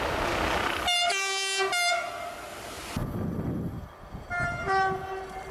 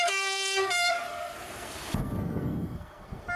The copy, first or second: second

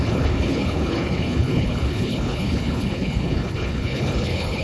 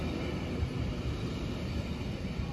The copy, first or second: first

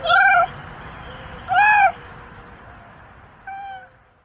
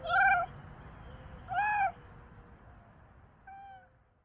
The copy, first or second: first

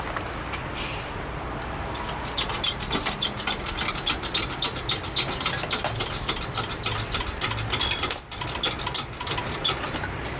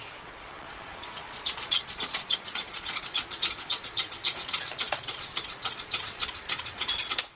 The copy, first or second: second